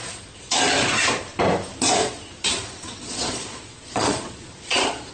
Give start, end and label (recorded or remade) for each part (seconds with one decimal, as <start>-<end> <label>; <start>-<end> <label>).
0.0-0.6 remade; 0.6-2.0 recorded; 2.0-5.1 remade